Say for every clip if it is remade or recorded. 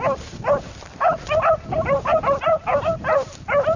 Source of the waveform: recorded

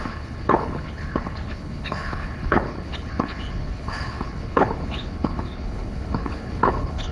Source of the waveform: remade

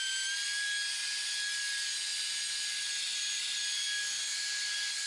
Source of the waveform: recorded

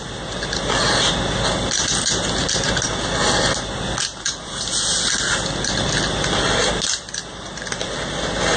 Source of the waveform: recorded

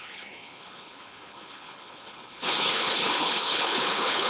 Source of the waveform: remade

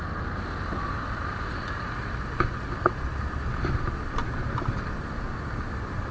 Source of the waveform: recorded